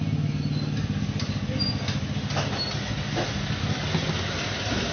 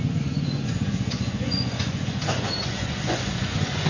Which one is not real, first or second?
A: second